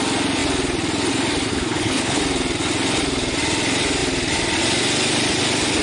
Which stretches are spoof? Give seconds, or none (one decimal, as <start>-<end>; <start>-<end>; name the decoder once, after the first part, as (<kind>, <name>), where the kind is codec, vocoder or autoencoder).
1.5-2.2 (codec, HILCodec)